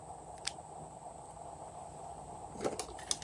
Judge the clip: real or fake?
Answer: real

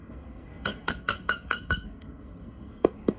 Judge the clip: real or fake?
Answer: fake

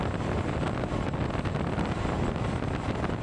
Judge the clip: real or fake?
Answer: real